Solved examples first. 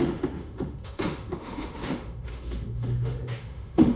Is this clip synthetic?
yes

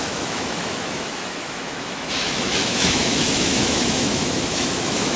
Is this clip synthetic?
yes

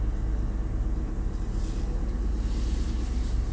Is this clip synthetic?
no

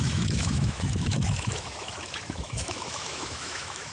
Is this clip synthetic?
yes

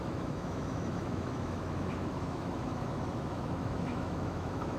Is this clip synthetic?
yes